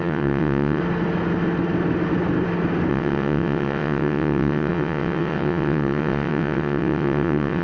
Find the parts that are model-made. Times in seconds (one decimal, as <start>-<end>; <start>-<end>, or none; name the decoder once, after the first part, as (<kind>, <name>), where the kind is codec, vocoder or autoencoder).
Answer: 0.0-0.8 (vocoder, WaveNeXt); 2.9-7.6